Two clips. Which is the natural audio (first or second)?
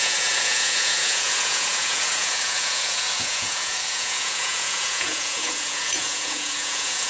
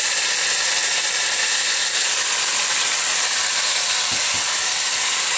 second